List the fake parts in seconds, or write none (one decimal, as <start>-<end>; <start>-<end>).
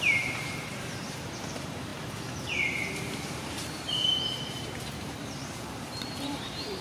0.0-6.8